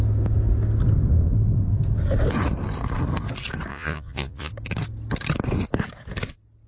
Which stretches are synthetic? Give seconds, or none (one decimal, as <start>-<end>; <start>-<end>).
3.7-4.5